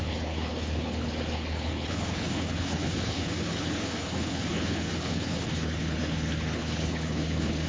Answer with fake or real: fake